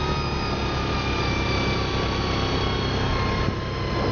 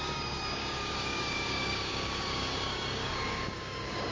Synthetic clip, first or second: second